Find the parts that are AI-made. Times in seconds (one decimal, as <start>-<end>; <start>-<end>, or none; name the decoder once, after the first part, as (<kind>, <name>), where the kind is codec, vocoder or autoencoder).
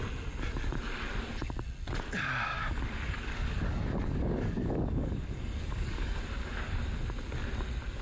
2.5-6.2 (codec, DAC)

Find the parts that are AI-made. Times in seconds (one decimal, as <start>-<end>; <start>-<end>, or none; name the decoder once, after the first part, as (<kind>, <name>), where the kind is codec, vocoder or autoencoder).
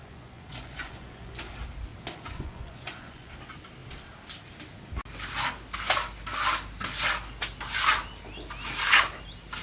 0.0-1.4 (vocoder, Vocos); 1.9-3.3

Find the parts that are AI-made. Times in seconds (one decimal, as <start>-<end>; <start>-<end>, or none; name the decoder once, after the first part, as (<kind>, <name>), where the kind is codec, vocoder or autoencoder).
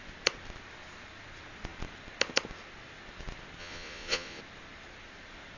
3.6-4.4 (vocoder, Vocos)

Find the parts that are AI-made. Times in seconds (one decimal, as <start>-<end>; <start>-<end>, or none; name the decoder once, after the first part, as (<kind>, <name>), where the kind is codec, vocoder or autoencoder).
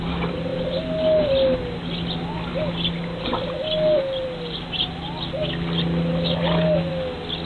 none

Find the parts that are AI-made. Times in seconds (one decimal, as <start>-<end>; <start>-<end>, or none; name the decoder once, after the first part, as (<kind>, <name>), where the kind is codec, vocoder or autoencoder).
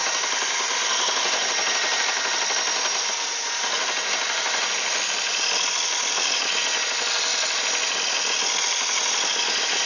0.0-5.0 (vocoder, BigVGAN v2)